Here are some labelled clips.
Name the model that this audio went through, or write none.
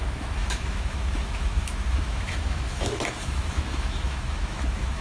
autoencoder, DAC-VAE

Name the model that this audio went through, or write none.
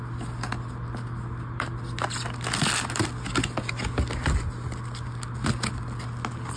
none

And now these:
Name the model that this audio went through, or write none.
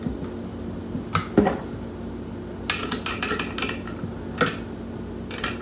none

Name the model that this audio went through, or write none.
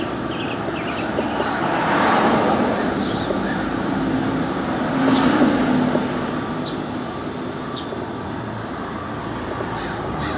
none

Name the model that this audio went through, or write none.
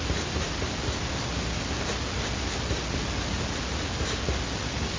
none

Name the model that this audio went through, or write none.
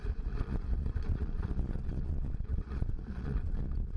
vocoder, Vocos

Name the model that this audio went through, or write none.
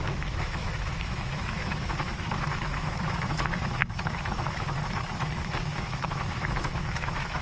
autoencoder, DAC-VAE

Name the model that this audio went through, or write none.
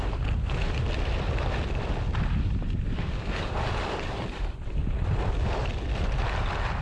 none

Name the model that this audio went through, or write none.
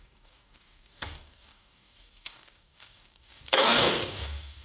codec, DAC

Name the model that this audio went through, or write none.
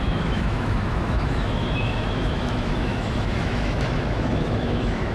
autoencoder, DAC-VAE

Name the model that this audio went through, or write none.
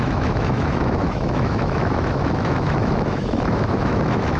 autoencoder, DAC-VAE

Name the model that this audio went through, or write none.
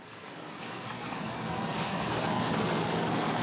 codec, SNAC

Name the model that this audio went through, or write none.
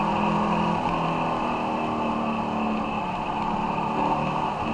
none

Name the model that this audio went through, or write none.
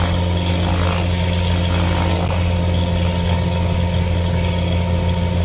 none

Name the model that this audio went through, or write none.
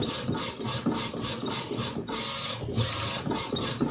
none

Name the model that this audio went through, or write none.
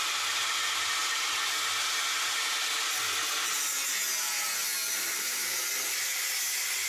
none